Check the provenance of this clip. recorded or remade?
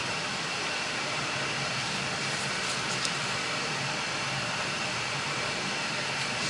remade